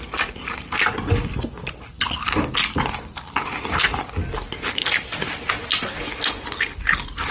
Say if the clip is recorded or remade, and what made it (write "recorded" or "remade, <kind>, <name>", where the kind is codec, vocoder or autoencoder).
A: recorded